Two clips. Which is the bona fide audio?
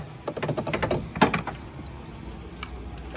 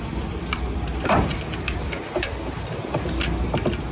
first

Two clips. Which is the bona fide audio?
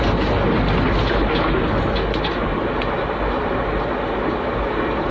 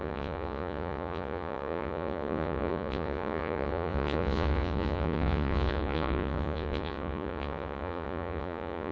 first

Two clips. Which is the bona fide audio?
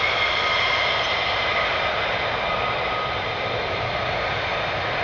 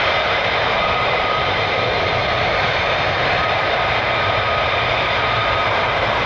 first